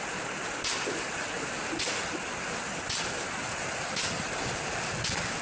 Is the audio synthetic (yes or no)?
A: no